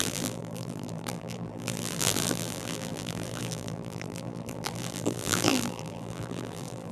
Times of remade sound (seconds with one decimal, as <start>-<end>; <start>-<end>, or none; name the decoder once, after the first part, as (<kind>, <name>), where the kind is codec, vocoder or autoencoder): 0.0-6.9 (vocoder, BigVGAN v2)